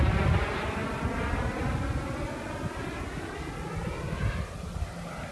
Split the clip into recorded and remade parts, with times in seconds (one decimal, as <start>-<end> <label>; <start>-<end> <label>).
0.0-5.3 recorded